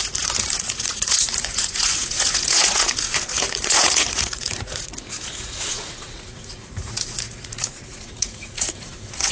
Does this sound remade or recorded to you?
remade